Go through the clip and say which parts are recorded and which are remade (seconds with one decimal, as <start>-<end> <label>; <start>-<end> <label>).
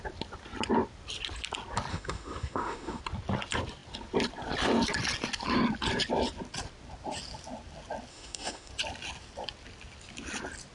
0.0-1.9 recorded; 1.9-3.0 remade; 3.0-8.1 recorded; 8.1-8.7 remade; 8.7-10.7 recorded